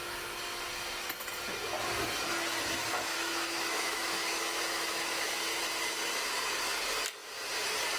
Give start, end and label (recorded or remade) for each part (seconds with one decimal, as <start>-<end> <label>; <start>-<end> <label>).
0.0-2.8 recorded; 2.8-5.6 remade; 5.6-8.0 recorded